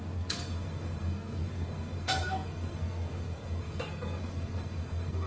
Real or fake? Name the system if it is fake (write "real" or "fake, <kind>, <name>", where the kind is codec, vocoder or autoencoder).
fake, codec, SNAC